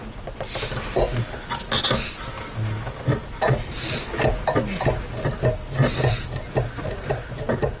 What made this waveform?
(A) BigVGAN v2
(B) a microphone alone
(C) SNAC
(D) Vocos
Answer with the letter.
B